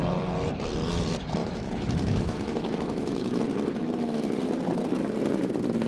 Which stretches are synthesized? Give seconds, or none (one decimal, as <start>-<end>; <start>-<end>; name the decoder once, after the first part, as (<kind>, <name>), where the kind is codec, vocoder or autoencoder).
1.4-3.4 (autoencoder, DAC-VAE)